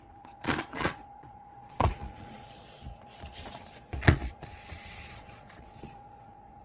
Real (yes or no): no